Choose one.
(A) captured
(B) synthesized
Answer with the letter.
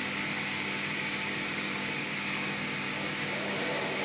B